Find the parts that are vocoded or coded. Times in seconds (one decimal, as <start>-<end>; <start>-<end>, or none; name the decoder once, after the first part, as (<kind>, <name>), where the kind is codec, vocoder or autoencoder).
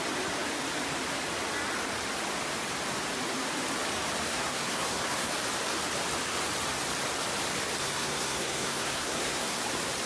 4.3-5.3 (codec, SNAC); 7.8-9.6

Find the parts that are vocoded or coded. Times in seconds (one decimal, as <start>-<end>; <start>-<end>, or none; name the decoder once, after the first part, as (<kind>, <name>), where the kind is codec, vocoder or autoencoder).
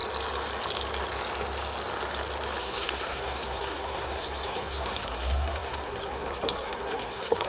2.6-7.5 (codec, SNAC)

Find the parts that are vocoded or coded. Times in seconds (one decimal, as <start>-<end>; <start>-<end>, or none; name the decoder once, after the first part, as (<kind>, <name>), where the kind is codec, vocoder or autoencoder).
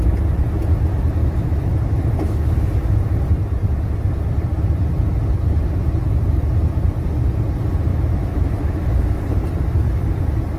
1.2-3.2 (autoencoder, DAC-VAE); 7.9-9.2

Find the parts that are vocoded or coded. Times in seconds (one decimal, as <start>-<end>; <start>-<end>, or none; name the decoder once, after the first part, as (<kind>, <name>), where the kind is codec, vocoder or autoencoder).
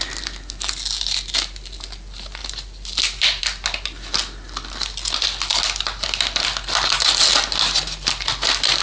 none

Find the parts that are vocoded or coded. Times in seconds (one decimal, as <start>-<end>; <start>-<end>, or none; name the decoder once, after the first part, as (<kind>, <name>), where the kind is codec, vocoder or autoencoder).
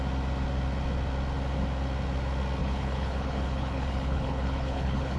2.6-5.2 (codec, HILCodec)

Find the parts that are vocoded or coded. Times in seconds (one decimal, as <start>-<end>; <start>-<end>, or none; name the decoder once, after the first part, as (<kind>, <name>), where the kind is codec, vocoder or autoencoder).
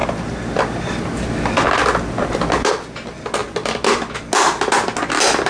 none